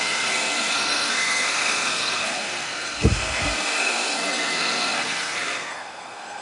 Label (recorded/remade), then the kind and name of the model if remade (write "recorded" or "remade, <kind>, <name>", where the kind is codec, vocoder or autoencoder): remade, codec, SNAC